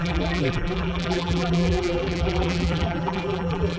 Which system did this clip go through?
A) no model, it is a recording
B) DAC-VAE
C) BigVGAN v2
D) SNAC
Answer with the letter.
C